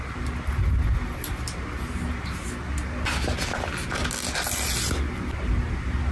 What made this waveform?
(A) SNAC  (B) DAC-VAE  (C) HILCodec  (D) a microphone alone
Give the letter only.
D